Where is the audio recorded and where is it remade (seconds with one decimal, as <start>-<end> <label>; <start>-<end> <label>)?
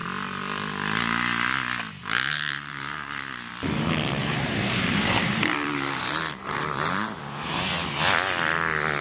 0.0-2.0 recorded; 2.0-3.5 remade; 3.5-4.2 recorded; 4.2-7.7 remade; 7.7-9.0 recorded